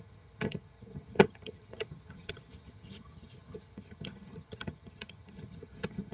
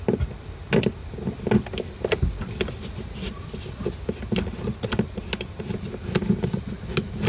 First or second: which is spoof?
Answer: first